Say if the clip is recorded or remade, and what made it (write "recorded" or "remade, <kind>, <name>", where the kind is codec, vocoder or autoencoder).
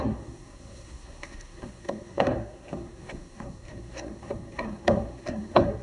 remade, codec, SNAC